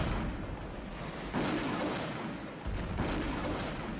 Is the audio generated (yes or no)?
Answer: no